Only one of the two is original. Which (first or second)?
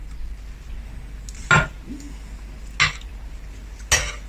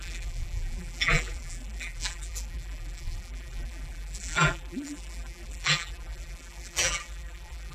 first